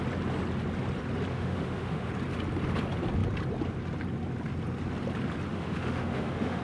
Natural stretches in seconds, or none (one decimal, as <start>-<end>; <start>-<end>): 0.0-1.3; 2.1-5.5